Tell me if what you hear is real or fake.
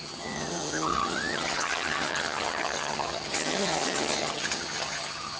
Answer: fake